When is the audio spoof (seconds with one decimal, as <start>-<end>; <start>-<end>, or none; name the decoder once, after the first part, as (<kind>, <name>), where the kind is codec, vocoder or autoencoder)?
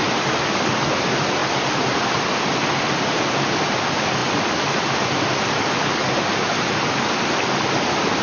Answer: 1.4-2.5 (vocoder, BigVGAN v2); 4.2-5.7